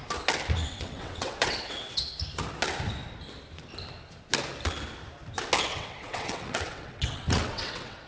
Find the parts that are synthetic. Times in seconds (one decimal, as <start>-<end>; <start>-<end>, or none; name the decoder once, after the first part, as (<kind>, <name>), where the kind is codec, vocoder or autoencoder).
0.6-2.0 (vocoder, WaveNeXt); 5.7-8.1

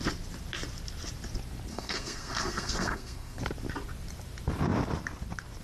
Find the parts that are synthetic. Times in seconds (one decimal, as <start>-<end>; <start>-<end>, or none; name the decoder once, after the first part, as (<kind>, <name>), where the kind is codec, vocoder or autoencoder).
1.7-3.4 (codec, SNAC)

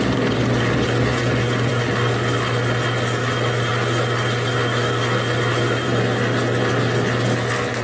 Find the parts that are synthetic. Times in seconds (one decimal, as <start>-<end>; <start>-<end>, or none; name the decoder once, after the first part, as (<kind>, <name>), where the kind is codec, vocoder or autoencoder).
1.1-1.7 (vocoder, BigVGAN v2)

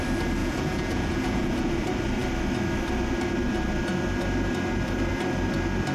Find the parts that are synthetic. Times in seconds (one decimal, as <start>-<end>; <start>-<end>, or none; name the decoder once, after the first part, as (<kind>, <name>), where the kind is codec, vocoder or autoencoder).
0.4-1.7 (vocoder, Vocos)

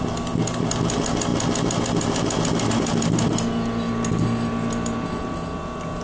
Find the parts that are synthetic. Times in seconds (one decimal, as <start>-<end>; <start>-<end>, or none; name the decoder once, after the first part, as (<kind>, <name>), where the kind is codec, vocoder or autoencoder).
none

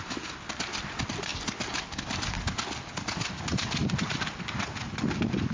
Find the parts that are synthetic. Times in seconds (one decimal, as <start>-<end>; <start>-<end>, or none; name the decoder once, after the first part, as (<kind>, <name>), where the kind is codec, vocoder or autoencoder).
none

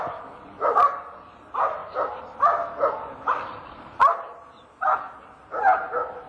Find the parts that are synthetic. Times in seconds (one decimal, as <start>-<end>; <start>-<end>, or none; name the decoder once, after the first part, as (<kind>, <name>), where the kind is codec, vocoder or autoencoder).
none

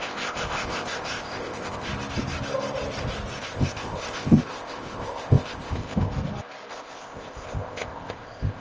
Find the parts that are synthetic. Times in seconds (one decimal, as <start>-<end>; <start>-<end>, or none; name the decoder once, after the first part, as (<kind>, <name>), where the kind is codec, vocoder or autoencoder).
0.0-1.9 (codec, ZipCodec); 3.4-6.1; 6.7-8.6